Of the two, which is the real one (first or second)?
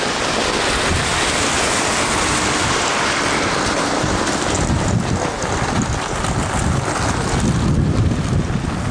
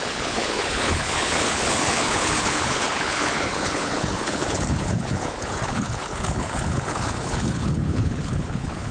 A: first